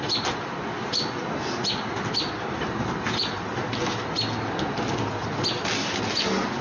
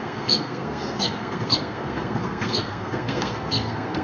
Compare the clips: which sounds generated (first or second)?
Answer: second